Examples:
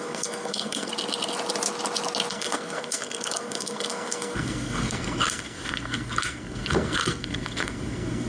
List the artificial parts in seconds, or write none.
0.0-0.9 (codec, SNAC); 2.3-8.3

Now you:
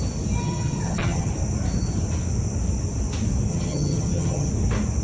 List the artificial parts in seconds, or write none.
0.4-1.3 (vocoder, HiFi-GAN); 3.5-4.5

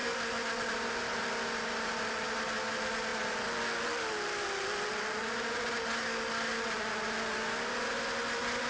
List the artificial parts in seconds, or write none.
none

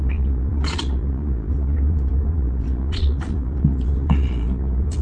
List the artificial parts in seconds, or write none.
0.0-5.0 (vocoder, Vocos)